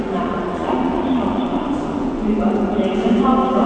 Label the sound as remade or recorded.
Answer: remade